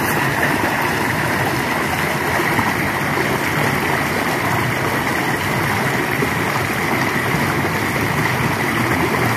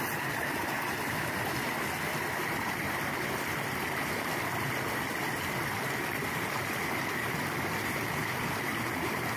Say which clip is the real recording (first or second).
first